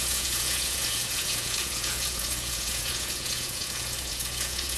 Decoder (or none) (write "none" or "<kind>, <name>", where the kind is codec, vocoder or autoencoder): vocoder, Vocos